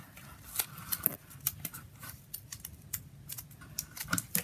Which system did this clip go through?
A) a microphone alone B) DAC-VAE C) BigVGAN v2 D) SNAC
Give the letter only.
A